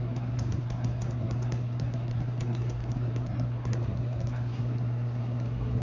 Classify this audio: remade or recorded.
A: remade